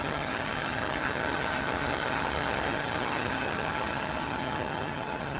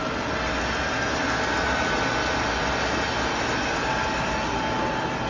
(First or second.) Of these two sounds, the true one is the second